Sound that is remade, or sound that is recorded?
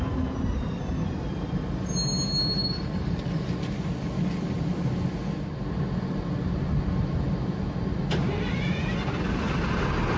recorded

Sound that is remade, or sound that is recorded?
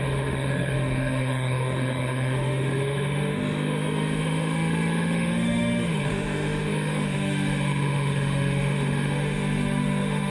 remade